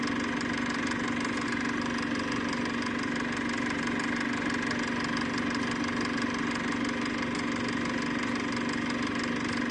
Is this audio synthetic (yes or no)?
no